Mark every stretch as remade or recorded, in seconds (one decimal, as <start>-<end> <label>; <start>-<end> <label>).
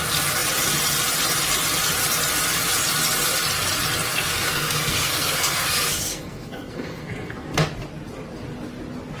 0.0-4.1 recorded; 4.1-7.7 remade; 7.7-9.2 recorded